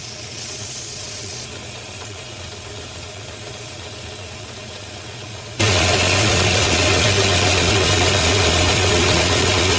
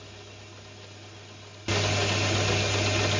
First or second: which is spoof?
first